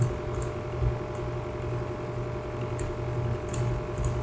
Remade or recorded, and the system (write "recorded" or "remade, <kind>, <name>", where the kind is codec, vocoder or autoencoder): recorded